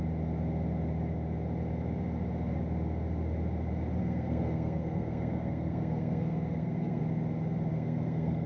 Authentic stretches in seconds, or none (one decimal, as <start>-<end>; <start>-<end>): 0.0-4.0; 7.0-7.7